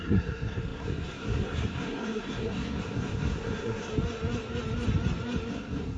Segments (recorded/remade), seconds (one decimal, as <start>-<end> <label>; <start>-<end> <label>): 0.0-3.9 remade; 3.9-5.5 recorded; 5.5-6.0 remade